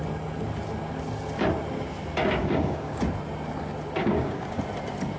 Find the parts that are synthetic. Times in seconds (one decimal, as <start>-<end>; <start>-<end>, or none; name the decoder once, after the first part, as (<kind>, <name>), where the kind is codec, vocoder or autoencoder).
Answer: 2.4-3.0 (codec, DAC); 4.0-4.6